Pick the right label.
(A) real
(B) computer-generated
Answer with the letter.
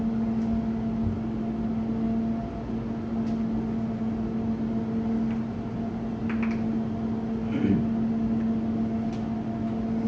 A